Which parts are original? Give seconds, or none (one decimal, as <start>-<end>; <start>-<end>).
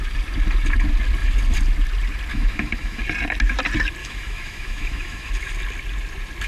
0.0-2.3; 3.0-4.0; 5.3-6.5